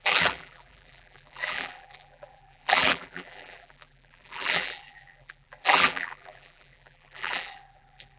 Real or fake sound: fake